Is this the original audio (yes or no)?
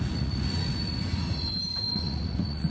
no